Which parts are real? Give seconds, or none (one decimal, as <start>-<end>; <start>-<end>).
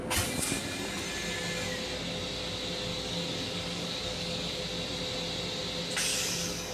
0.0-2.9; 4.6-6.1